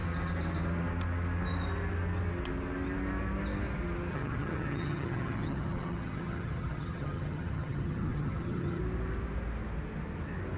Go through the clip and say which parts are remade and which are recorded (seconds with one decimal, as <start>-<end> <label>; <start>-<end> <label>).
0.0-4.1 recorded; 4.1-8.8 remade; 8.8-10.6 recorded